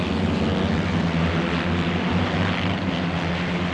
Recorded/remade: recorded